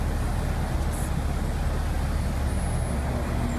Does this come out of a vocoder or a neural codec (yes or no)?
no